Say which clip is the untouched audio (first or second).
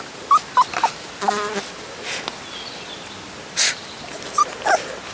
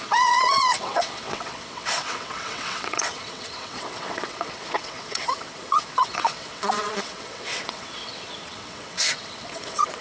first